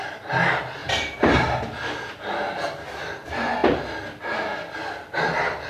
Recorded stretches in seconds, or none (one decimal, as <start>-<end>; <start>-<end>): 0.0-5.7